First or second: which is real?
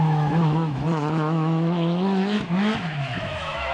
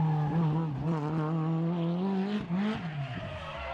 second